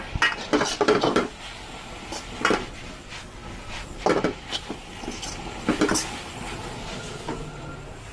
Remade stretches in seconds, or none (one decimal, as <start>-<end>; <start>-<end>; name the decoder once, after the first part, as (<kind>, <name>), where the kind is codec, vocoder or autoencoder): none